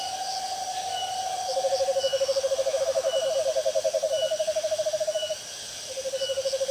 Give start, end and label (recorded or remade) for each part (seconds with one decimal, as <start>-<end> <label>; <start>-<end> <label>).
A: 0.0-6.7 recorded